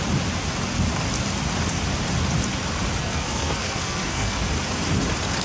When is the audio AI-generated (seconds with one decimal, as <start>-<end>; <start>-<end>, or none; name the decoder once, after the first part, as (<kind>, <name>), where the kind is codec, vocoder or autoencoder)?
3.0-4.5 (codec, SNAC)